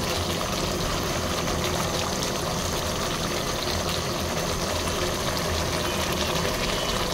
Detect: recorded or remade recorded